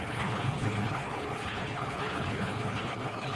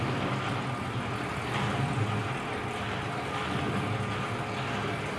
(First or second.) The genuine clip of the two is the second